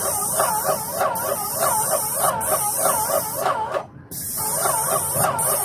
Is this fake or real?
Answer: real